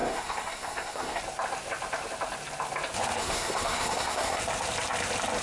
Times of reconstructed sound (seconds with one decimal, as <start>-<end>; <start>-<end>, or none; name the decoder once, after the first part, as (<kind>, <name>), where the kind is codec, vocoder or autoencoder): 0.0-1.2 (codec, SNAC); 3.2-4.4